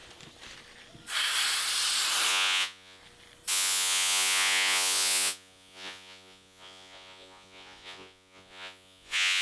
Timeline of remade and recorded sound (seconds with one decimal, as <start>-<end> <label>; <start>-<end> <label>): 0.0-2.3 recorded; 2.3-3.0 remade; 3.0-3.5 recorded; 3.5-9.4 remade